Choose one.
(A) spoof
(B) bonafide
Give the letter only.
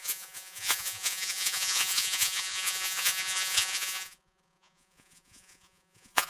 A